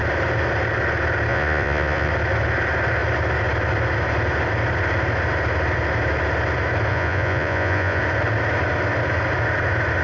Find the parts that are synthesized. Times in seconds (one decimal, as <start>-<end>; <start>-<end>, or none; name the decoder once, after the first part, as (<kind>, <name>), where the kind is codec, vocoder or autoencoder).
1.3-2.1 (vocoder, Vocos); 6.9-8.0